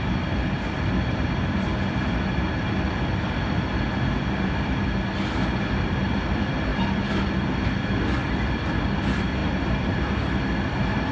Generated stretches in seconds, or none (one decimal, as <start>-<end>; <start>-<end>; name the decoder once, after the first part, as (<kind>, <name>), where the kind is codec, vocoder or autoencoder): 9.4-10.0 (vocoder, BigVGAN v2)